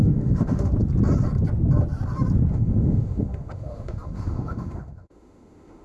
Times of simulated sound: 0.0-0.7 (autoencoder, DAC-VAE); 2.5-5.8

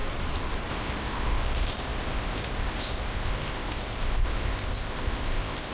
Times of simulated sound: 0.7-5.7 (codec, ZipCodec)

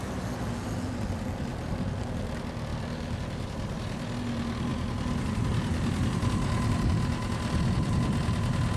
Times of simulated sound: 2.7-4.1 (vocoder, BigVGAN v2)

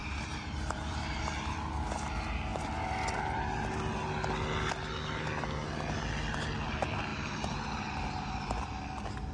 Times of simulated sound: 0.0-1.2 (vocoder, BigVGAN v2); 7.1-8.7

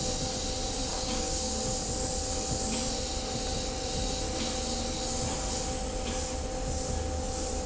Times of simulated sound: 0.9-1.5 (codec, DAC)

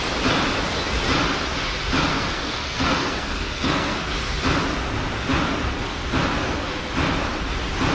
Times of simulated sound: 2.1-4.1 (codec, SNAC)

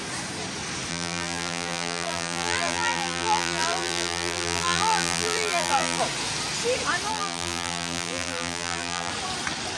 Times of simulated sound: 0.9-6.0 (vocoder, BigVGAN v2); 7.1-9.1

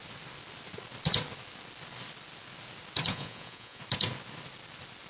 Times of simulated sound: 3.1-3.8 (vocoder, Vocos)